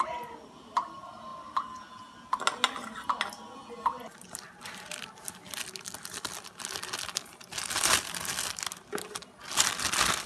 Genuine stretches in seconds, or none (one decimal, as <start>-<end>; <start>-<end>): 0.0-10.3